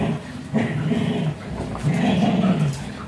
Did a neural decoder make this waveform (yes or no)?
no